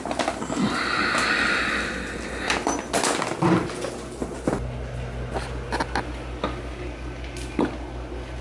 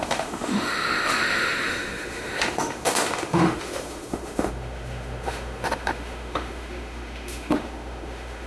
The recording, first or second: first